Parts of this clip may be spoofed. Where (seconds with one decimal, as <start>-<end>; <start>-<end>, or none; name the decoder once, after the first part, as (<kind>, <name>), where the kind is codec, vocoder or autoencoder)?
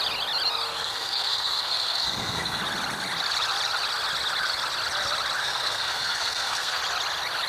0.7-2.6 (codec, SNAC); 5.4-6.8